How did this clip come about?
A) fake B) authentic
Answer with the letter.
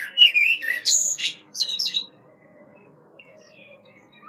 A